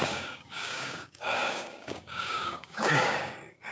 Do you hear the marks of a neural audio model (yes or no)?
yes